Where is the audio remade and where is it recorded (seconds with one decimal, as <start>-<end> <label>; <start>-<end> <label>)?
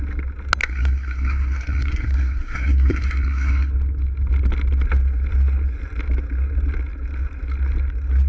0.0-0.6 recorded; 0.6-3.7 remade; 3.7-8.3 recorded